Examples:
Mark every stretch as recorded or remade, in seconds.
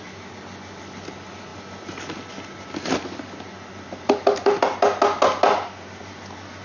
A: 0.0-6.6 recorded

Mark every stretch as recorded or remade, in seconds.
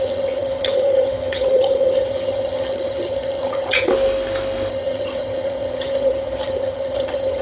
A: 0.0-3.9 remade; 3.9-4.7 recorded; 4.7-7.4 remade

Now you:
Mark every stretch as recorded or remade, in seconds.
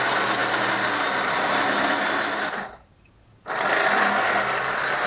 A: 0.0-5.1 recorded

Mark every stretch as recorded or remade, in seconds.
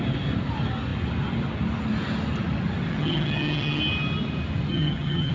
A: 0.0-2.9 recorded; 2.9-3.8 remade; 3.8-4.7 recorded; 4.7-5.3 remade